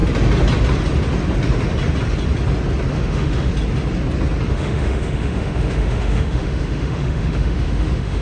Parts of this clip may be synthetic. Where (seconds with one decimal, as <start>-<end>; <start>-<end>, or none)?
2.9-3.5; 4.5-8.2